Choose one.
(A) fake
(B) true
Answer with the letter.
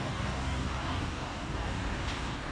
A